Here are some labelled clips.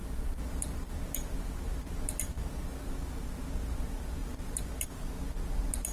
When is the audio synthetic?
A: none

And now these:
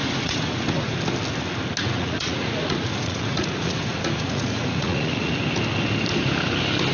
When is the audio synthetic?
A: 0.0-0.9 (vocoder, Vocos); 1.8-5.3

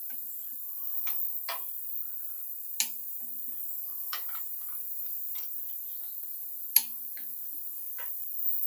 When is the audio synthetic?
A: 4.0-5.7 (vocoder, Vocos)

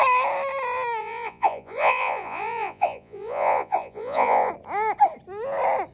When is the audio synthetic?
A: 1.0-4.5 (vocoder, Vocos)

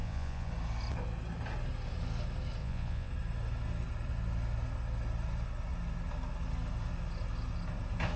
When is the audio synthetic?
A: 0.0-0.5 (vocoder, Vocos); 2.6-3.1

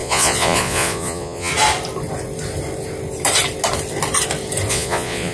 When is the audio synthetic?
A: 0.0-1.5 (vocoder, Vocos); 4.7-5.3